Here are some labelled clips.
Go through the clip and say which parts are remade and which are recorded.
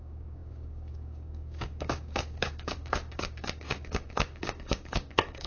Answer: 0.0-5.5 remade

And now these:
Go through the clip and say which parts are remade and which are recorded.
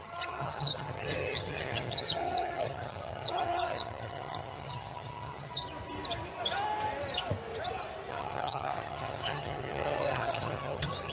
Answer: 0.0-5.6 remade; 5.6-8.1 recorded; 8.1-11.1 remade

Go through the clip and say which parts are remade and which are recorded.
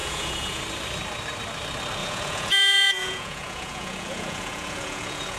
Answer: 0.0-0.6 remade; 0.6-2.0 recorded; 2.0-5.4 remade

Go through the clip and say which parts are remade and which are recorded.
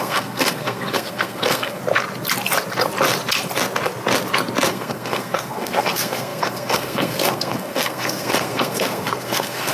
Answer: 0.0-1.8 remade; 1.8-4.7 recorded; 4.7-9.7 remade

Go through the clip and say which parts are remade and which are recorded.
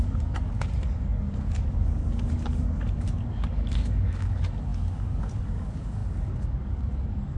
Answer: 0.0-7.4 remade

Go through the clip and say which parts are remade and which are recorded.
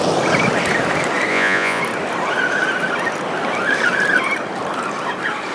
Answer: 0.0-1.3 recorded; 1.3-1.8 remade; 1.8-5.5 recorded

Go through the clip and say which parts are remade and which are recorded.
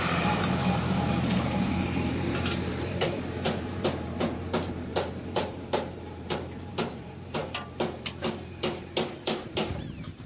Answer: 0.0-10.3 remade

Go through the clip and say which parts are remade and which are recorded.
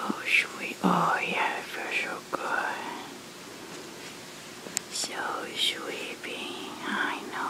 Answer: 0.0-0.5 recorded; 0.5-1.1 remade; 1.1-5.5 recorded; 5.5-6.0 remade; 6.0-7.5 recorded